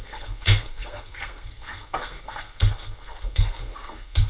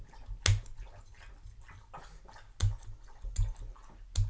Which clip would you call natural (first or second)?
second